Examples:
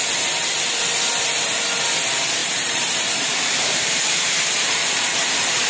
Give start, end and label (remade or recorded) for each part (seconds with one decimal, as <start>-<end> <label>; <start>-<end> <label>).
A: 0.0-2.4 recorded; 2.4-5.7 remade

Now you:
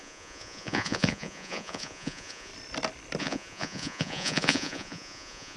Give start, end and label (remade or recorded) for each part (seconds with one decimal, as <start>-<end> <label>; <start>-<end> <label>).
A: 0.0-2.5 remade; 2.5-3.2 recorded; 3.2-5.6 remade

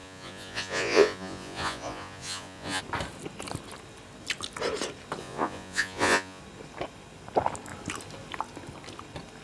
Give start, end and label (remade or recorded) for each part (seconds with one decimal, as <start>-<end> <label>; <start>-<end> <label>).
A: 0.0-2.8 remade; 2.8-5.2 recorded; 5.2-6.4 remade; 6.4-9.4 recorded

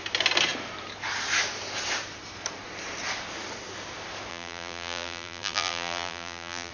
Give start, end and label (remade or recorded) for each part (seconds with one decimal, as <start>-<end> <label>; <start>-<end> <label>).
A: 0.0-4.3 recorded; 4.3-6.7 remade

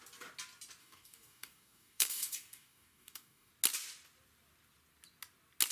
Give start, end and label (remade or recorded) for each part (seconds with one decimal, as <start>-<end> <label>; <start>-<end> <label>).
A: 0.0-0.8 recorded; 0.8-3.5 remade; 3.5-5.7 recorded

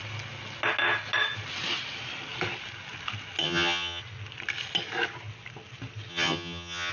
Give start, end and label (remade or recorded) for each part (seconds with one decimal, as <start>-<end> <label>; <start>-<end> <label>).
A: 0.0-3.4 recorded; 3.4-4.0 remade; 4.0-6.1 recorded; 6.1-6.9 remade